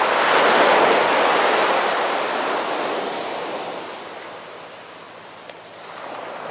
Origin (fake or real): real